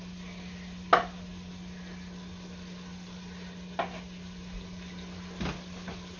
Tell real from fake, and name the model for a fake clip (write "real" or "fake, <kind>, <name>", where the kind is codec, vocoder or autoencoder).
real